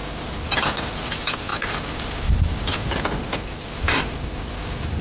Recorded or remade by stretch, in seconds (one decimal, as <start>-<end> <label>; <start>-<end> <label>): 0.0-5.0 recorded